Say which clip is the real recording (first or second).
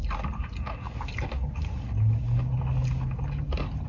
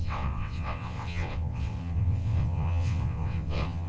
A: first